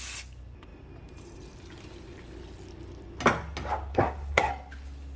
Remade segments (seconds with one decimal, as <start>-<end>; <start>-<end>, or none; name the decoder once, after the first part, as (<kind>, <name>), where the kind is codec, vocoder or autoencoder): 3.9-4.5 (codec, SNAC)